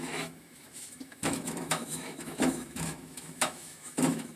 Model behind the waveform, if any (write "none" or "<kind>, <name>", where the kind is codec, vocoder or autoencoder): autoencoder, DAC-VAE